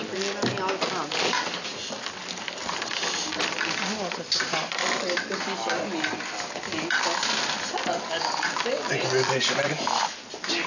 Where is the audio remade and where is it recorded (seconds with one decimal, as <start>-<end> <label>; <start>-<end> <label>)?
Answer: 0.0-10.7 recorded